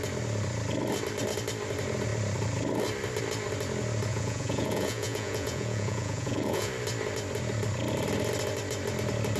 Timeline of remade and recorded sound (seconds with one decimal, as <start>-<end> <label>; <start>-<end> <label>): 0.0-4.1 recorded; 4.1-6.7 remade; 6.7-9.4 recorded